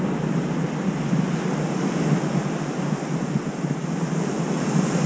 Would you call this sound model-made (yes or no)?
no